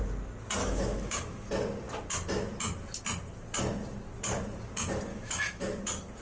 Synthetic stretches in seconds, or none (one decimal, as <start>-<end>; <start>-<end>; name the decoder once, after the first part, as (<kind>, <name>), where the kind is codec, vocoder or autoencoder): 0.6-1.5 (autoencoder, DAC-VAE); 5.1-5.6